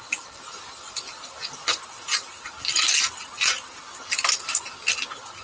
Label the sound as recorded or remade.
recorded